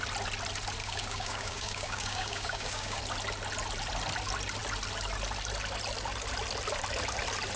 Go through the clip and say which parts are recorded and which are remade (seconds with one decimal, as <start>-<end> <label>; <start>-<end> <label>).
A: 0.0-0.8 recorded; 0.8-3.0 remade; 3.0-7.6 recorded